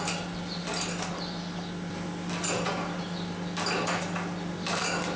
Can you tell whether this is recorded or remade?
recorded